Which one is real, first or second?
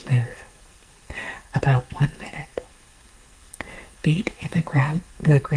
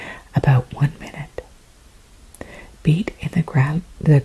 second